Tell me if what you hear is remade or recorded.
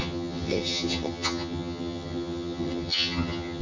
remade